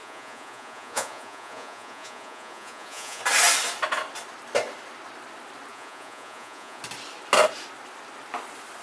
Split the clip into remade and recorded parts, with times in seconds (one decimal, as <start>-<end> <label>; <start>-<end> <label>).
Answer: 0.0-3.2 remade; 3.2-5.7 recorded; 5.7-6.8 remade; 6.8-8.8 recorded